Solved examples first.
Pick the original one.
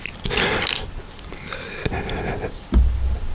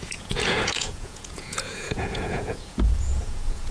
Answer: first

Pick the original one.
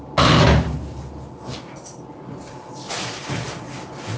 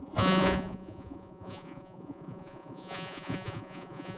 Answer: first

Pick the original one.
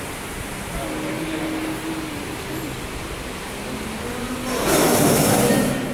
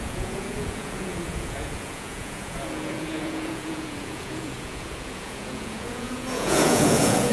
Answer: first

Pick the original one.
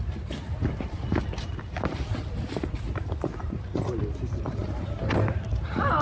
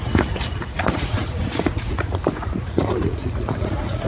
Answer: first